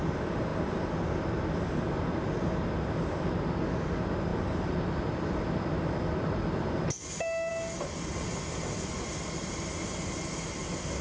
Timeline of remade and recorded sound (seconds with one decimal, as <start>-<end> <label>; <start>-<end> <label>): 0.0-11.0 recorded